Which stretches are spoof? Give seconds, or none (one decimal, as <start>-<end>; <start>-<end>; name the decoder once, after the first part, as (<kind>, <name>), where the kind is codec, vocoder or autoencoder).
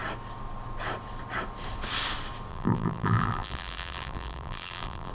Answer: 2.5-5.1 (vocoder, BigVGAN v2)